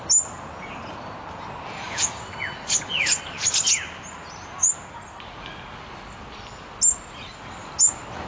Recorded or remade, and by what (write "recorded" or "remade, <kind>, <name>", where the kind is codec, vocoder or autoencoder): recorded